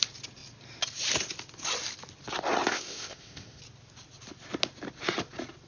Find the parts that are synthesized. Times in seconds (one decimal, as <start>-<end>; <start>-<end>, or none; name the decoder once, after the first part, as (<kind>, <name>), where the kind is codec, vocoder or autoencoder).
2.7-3.6 (codec, ZipCodec)